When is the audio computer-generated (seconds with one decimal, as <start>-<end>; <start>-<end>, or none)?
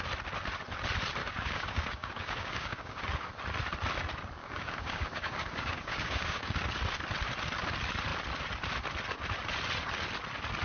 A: 1.2-3.0; 4.4-6.6